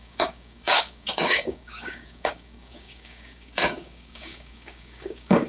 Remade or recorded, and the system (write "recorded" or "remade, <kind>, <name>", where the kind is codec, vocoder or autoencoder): remade, codec, DAC